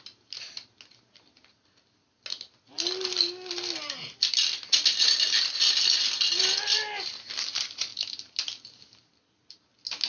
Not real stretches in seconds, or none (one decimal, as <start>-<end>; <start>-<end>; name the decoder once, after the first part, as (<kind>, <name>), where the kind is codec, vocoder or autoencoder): none